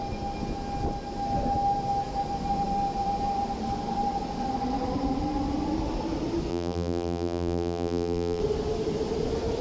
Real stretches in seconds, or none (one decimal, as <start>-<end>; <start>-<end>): 0.0-6.5; 8.4-9.6